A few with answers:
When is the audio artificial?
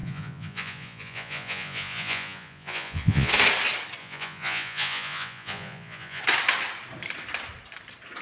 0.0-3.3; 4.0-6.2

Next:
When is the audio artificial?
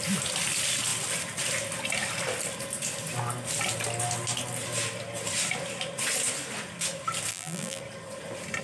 7.3-7.8